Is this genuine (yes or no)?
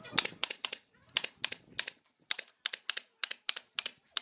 no